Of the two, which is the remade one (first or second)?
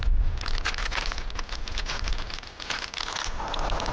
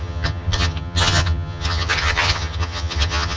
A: second